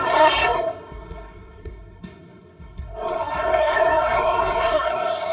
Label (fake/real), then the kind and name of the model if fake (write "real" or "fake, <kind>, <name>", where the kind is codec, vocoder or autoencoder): fake, codec, SNAC